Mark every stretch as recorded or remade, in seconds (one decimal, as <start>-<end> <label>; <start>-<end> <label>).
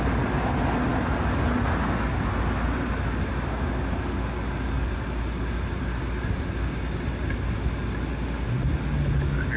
0.0-9.6 recorded